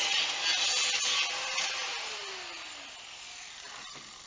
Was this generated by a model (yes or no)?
no